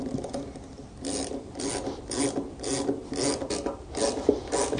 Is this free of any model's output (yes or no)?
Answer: yes